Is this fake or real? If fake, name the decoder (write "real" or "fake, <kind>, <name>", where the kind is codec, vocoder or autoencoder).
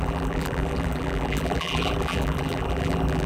fake, vocoder, BigVGAN v2